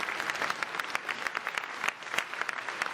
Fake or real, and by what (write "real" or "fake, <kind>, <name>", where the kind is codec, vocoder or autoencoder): fake, vocoder, BigVGAN v2